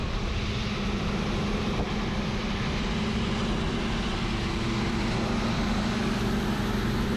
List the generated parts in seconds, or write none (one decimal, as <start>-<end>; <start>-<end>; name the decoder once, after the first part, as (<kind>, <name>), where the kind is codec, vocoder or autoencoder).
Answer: 0.0-4.3 (vocoder, BigVGAN v2)